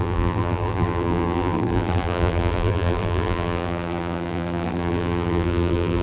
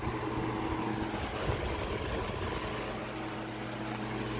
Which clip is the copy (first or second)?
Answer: first